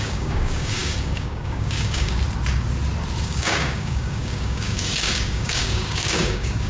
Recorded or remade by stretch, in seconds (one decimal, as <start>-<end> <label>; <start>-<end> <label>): 0.0-2.2 remade; 2.2-3.2 recorded; 3.2-6.7 remade